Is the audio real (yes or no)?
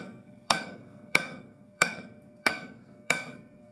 no